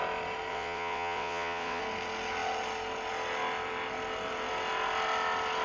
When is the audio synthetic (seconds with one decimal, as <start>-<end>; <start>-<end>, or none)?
0.5-1.8